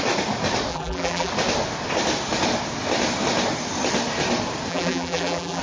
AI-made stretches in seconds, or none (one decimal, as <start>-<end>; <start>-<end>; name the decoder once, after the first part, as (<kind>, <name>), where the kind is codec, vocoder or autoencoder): 0.7-1.3 (vocoder, BigVGAN v2); 4.7-5.6